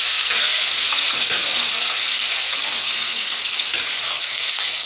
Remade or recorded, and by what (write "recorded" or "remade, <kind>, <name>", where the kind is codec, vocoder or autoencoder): remade, codec, SNAC